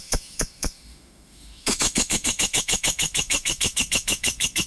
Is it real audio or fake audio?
fake